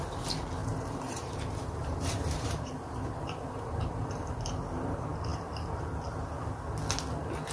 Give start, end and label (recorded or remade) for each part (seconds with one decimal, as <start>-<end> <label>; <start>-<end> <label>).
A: 0.0-0.6 recorded; 0.6-4.3 remade; 4.3-7.5 recorded